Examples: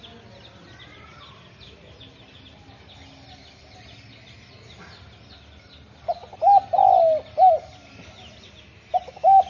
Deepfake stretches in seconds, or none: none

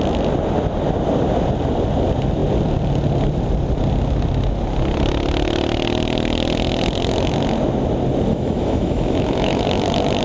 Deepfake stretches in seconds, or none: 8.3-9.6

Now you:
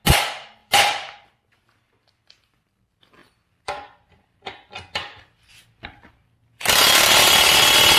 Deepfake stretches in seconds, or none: 0.6-1.3

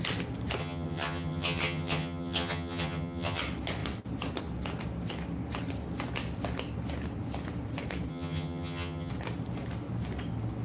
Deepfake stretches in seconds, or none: 0.6-3.4; 8.1-9.1

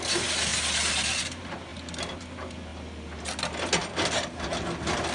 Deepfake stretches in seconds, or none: none

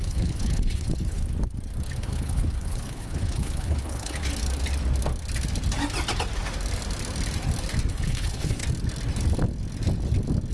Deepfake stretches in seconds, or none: 0.0-1.2; 2.0-4.2; 7.9-8.6

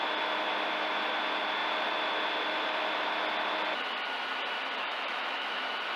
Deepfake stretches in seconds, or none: 4.9-5.6